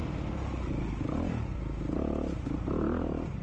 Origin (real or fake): real